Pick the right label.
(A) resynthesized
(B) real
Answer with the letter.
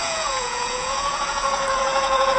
A